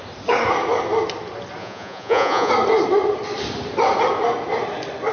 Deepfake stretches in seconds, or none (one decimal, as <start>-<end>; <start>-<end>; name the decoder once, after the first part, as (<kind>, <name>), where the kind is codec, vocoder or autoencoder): 1.6-2.5 (vocoder, Vocos)